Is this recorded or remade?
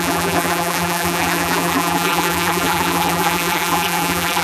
remade